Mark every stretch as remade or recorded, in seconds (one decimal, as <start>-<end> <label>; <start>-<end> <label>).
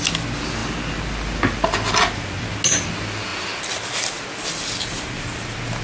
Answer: 0.0-5.8 recorded